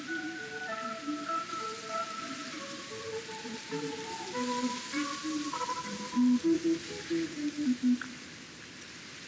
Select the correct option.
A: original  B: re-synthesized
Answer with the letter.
B